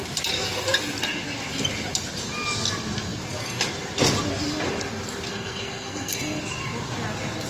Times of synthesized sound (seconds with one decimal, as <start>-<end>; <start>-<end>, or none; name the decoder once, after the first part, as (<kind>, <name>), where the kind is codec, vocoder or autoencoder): 5.3-6.4 (codec, SNAC)